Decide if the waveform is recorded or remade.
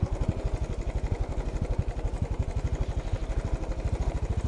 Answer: recorded